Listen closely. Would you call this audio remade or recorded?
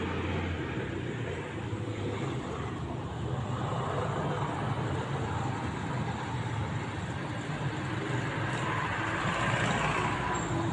recorded